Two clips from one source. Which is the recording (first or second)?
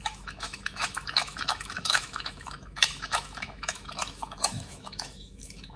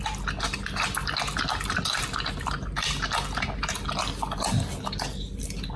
second